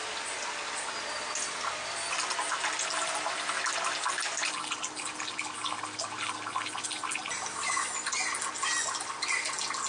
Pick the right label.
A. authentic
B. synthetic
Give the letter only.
A